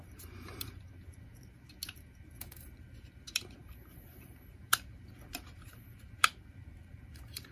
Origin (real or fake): fake